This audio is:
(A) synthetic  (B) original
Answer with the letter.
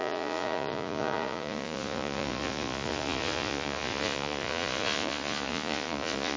A